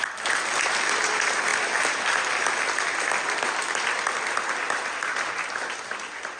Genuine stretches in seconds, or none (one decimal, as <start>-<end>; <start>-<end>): 0.0-6.4